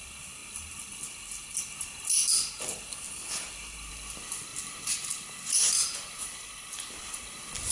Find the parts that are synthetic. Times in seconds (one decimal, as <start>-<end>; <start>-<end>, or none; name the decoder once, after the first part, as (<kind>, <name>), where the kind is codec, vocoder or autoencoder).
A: none